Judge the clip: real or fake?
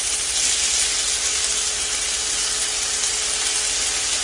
real